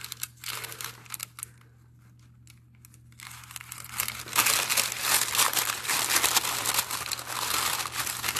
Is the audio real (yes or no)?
yes